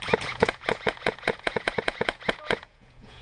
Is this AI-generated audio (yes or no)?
yes